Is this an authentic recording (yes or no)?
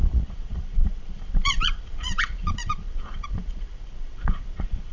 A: no